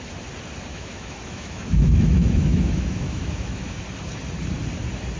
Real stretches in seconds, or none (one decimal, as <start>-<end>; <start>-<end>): 0.0-0.7; 3.8-5.2